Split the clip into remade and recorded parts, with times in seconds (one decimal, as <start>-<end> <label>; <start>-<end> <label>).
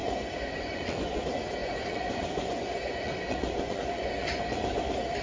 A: 0.0-1.2 remade; 1.2-1.6 recorded; 1.6-4.7 remade; 4.7-5.2 recorded